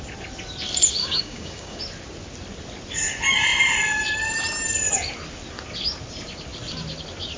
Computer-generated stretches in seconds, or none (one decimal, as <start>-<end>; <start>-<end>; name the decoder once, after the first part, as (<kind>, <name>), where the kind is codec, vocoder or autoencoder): 1.0-1.8 (codec, DAC)